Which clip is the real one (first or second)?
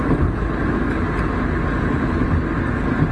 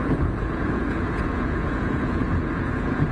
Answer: first